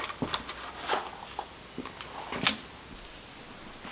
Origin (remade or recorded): recorded